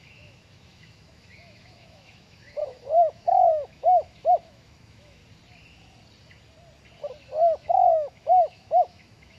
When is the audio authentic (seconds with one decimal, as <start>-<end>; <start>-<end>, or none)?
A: 5.2-7.6